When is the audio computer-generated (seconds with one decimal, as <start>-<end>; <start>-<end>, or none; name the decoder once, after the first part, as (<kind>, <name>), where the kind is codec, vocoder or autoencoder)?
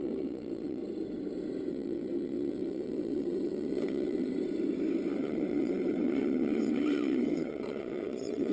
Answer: 0.0-0.8 (vocoder, WaveNeXt); 1.7-4.3; 5.1-8.5